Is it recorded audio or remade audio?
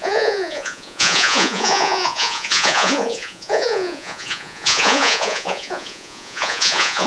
remade